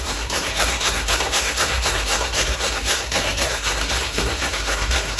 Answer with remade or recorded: remade